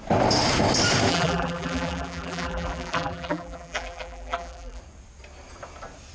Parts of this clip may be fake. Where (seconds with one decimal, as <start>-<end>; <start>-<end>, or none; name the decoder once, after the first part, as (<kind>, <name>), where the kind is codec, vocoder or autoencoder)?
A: 1.1-4.8 (vocoder, BigVGAN v2)